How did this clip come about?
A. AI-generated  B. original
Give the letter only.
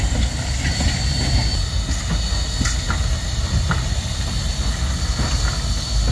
B